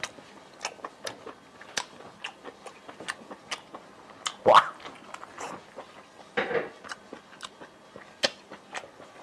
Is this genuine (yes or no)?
yes